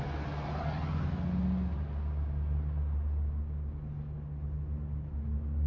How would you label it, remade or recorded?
recorded